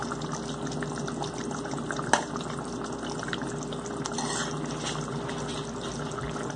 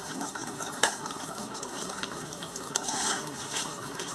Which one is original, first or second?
first